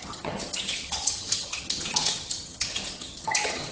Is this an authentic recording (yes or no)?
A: no